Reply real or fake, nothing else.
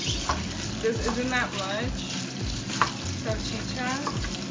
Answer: real